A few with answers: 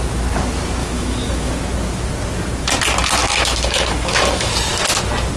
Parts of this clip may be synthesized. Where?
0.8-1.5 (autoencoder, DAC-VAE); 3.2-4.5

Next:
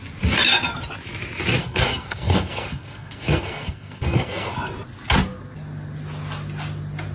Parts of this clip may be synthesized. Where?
1.6-4.5 (codec, SNAC)

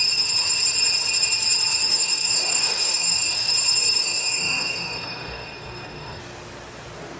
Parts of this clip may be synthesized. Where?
1.9-3.5 (codec, DAC); 4.0-6.2

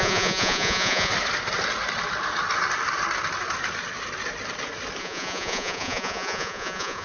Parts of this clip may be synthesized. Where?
0.0-1.1 (vocoder, Vocos); 5.0-7.0

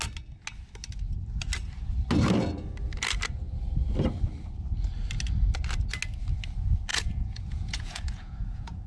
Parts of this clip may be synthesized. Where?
6.9-8.9 (vocoder, Vocos)

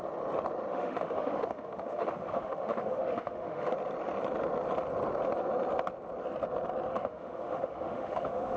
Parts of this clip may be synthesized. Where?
0.7-3.7 (autoencoder, DAC-VAE); 6.9-8.6

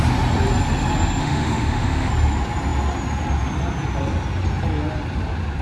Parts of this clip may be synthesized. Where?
1.2-2.1 (autoencoder, DAC-VAE)

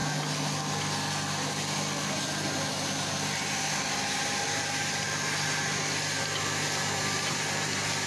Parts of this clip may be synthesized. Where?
none